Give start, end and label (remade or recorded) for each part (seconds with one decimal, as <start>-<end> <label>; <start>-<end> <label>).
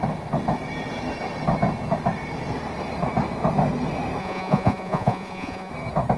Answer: 0.0-4.2 recorded; 4.2-5.7 remade; 5.7-6.2 recorded